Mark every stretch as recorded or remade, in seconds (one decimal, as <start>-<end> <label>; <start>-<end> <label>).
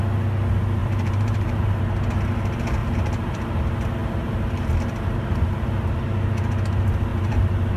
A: 0.0-0.8 recorded; 0.8-1.8 remade; 1.8-2.8 recorded; 2.8-3.6 remade; 3.6-4.0 recorded; 4.0-4.6 remade; 4.6-7.1 recorded; 7.1-7.8 remade